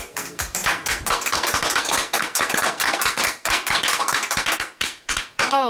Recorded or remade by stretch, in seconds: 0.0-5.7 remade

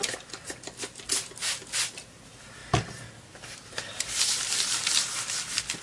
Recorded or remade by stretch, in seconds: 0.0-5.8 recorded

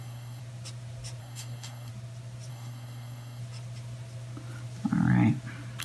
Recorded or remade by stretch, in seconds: 0.0-0.4 remade; 0.4-1.2 recorded; 1.2-1.9 remade; 1.9-2.5 recorded; 2.5-3.4 remade; 3.4-5.8 recorded

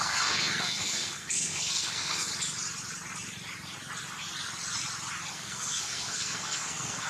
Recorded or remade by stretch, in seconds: 0.0-2.3 remade; 2.3-5.3 recorded; 5.3-7.1 remade

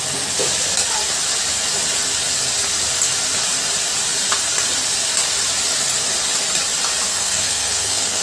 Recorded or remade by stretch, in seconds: 0.0-7.1 recorded; 7.1-8.2 remade

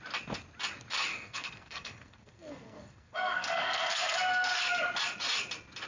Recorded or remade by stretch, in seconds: 0.0-1.1 recorded; 1.1-4.6 remade; 4.6-5.9 recorded